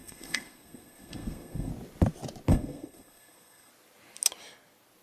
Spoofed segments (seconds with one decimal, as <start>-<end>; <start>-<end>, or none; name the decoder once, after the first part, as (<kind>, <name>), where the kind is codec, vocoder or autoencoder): 0.0-1.7 (codec, SNAC); 2.5-3.7